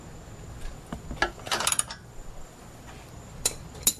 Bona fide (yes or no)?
yes